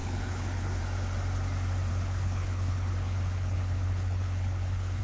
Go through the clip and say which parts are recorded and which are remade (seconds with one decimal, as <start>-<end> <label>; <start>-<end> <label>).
0.0-0.8 remade; 0.8-1.9 recorded; 1.9-5.0 remade

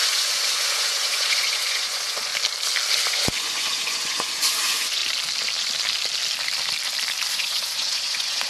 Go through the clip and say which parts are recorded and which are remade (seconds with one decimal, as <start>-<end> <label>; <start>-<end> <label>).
0.0-2.3 remade; 2.3-3.1 recorded; 3.1-5.0 remade; 5.0-7.3 recorded; 7.3-8.5 remade